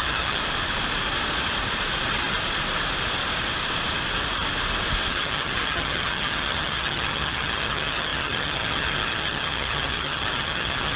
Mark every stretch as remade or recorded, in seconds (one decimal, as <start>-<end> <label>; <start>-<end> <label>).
0.0-0.4 remade; 0.4-5.1 recorded; 5.1-11.0 remade